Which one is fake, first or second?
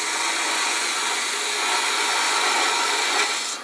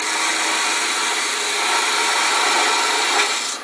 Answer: first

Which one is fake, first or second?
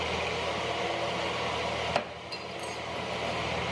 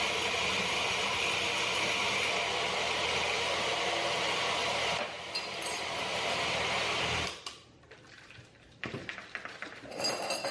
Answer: second